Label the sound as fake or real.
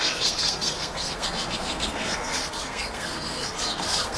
fake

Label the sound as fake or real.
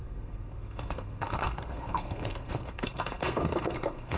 fake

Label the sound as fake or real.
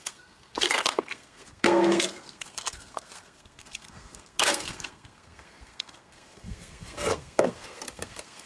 fake